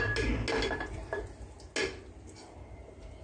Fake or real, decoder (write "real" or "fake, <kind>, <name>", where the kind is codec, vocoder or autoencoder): real